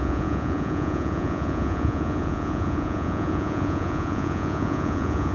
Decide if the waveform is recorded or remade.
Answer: remade